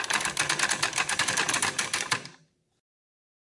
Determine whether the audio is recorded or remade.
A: recorded